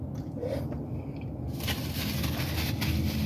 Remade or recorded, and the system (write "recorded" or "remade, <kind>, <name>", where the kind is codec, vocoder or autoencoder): recorded